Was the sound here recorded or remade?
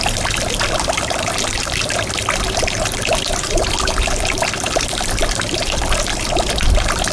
recorded